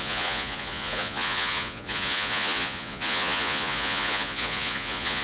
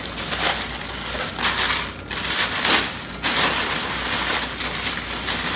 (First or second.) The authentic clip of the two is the second